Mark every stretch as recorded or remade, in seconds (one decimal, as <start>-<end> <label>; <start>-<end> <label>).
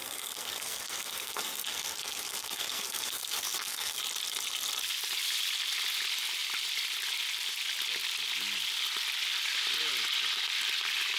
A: 0.0-4.0 remade; 4.0-11.2 recorded